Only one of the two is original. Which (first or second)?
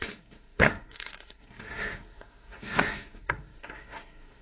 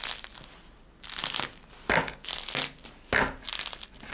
second